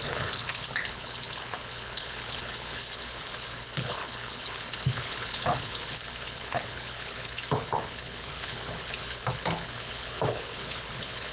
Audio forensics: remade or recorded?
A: remade